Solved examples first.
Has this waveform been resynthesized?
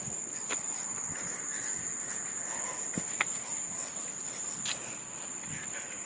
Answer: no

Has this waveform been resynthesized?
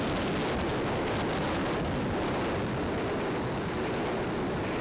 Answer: no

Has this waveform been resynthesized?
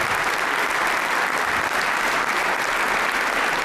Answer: no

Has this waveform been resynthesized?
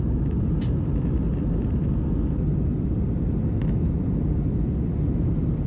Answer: yes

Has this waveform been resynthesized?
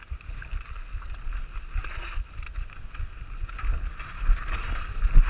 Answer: no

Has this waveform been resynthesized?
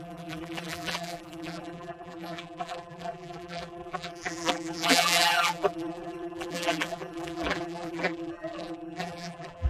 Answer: yes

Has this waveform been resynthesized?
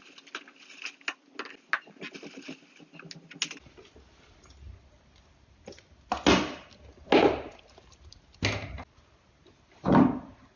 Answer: no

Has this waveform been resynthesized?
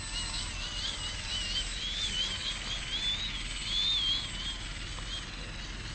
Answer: no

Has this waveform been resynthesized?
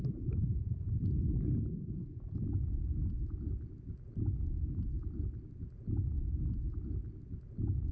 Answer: yes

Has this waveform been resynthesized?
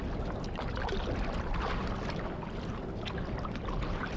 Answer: no